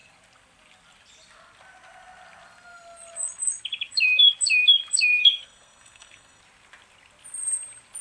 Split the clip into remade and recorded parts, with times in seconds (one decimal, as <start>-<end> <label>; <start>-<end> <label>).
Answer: 0.0-5.2 recorded; 5.2-6.4 remade; 6.4-8.0 recorded